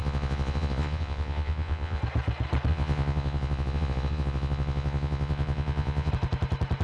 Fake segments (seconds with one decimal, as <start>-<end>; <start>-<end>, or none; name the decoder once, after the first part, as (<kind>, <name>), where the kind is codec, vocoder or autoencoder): 0.0-2.0 (vocoder, Vocos); 2.7-6.1